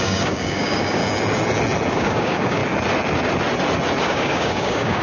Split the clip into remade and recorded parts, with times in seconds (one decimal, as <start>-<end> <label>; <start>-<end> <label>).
0.0-1.0 remade; 1.0-1.9 recorded; 1.9-2.6 remade; 2.6-4.0 recorded; 4.0-5.0 remade